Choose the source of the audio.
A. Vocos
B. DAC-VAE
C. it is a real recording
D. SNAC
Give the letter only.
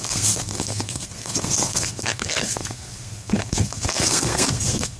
D